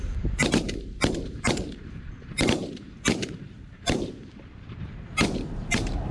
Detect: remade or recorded remade